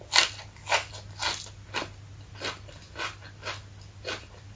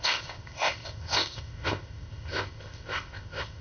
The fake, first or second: second